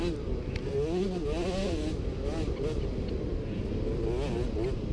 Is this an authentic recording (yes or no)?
yes